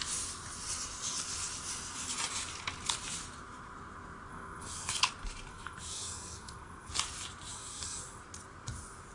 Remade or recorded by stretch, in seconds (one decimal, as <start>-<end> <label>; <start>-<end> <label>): 0.0-4.3 recorded; 4.3-4.9 remade; 4.9-5.5 recorded; 5.5-6.9 remade; 6.9-7.5 recorded; 7.5-8.2 remade; 8.2-9.1 recorded